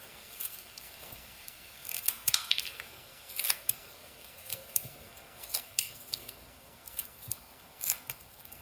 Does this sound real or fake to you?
fake